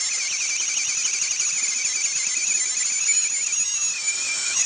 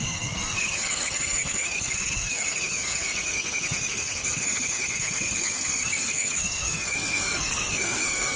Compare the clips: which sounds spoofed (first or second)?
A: second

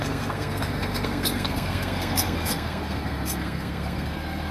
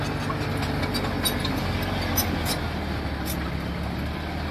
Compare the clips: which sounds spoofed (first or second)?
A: first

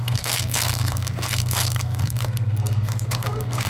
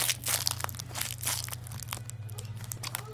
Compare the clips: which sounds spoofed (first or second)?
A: first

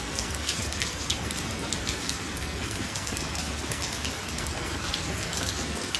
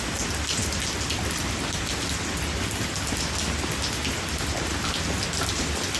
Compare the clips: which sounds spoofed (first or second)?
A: first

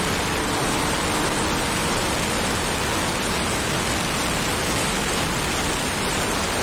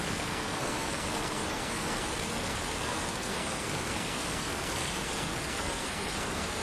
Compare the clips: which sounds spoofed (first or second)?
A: second